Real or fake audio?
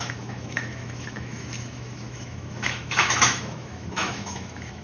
fake